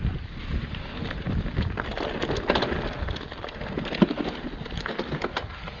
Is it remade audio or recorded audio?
recorded